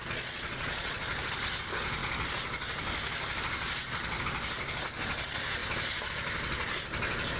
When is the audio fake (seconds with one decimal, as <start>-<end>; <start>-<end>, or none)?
0.0-1.0